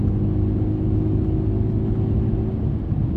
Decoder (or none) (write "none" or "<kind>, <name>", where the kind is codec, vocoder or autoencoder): none